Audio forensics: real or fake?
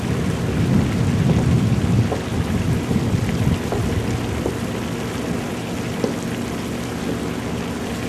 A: real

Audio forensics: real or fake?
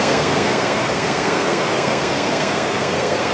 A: fake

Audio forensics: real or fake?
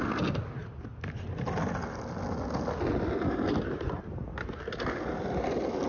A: real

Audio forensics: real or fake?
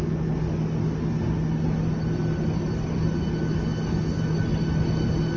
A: real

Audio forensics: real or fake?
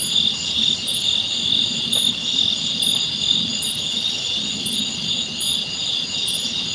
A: real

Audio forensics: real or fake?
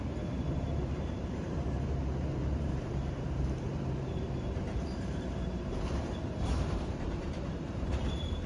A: fake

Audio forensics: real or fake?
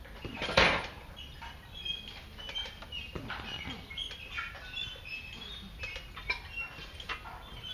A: real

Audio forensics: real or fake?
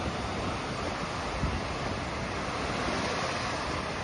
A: real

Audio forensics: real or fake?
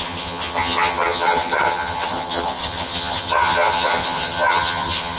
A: fake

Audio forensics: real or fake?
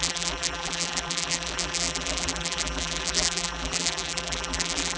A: fake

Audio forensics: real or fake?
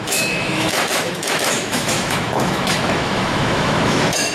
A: fake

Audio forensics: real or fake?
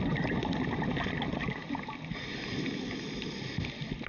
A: real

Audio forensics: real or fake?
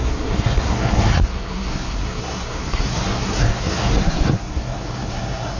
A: fake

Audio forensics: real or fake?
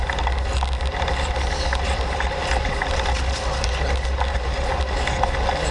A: real